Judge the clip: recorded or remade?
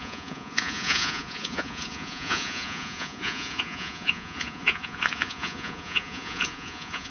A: remade